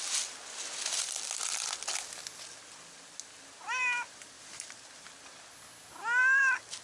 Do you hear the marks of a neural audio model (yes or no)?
no